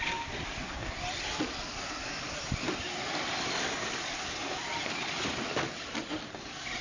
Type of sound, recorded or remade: recorded